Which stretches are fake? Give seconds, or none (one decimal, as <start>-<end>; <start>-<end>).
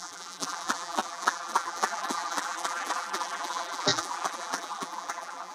0.0-5.5